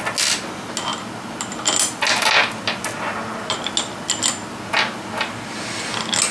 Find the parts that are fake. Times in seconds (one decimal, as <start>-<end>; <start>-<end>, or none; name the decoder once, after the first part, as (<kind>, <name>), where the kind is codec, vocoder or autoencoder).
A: none

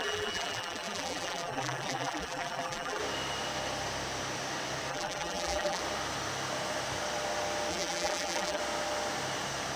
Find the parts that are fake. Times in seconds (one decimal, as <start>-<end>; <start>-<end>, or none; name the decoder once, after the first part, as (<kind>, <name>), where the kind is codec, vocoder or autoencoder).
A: 0.0-3.0 (vocoder, BigVGAN v2); 4.9-5.8; 7.7-8.6

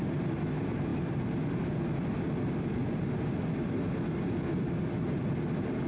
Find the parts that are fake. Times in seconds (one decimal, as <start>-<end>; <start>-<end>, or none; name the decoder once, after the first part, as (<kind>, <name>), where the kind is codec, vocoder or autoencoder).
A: none

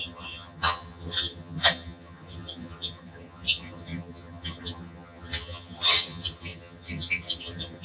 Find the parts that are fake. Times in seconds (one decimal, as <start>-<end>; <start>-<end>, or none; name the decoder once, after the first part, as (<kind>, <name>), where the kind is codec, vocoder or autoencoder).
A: 0.0-7.8 (vocoder, HiFi-GAN)

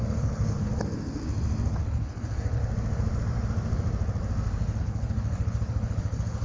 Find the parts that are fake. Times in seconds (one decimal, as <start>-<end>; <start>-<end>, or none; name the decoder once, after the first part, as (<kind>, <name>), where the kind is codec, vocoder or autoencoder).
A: 0.0-0.7 (codec, HILCodec); 1.7-2.6; 4.8-6.4

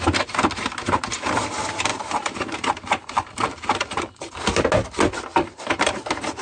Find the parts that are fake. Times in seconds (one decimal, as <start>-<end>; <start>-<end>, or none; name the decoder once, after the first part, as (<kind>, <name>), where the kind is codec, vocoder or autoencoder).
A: 1.9-4.3 (vocoder, BigVGAN v2); 5.3-6.0